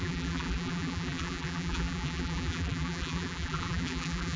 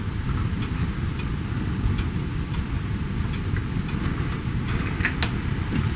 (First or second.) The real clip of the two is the second